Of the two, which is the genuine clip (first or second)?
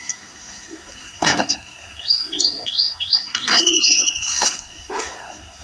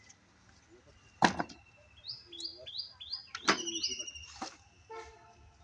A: second